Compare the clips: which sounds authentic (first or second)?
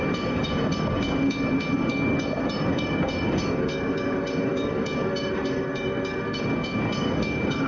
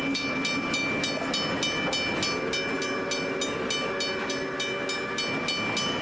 second